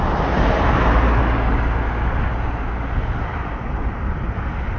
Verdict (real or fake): real